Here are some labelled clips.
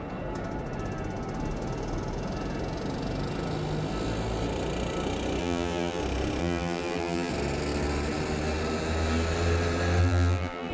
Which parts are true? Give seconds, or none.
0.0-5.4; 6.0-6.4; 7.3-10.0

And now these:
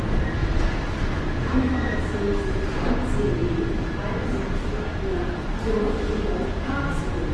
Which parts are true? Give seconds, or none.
0.0-7.3